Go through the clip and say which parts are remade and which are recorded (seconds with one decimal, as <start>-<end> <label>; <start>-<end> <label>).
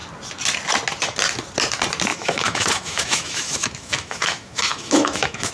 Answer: 0.0-2.1 recorded; 2.1-5.5 remade